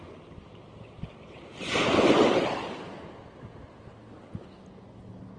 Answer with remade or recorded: recorded